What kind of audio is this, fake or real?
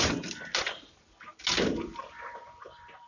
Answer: real